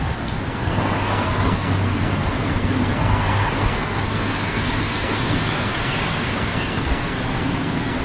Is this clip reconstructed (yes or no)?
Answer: yes